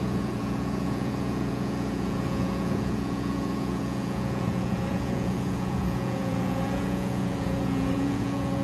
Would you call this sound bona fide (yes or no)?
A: no